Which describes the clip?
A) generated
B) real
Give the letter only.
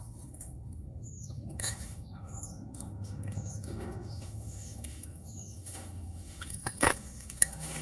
A